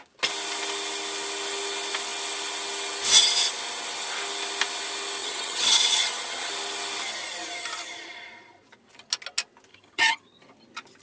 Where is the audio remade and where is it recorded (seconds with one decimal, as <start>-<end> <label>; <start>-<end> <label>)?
0.0-5.2 recorded; 5.2-6.5 remade; 6.5-9.7 recorded; 9.7-10.4 remade; 10.4-11.0 recorded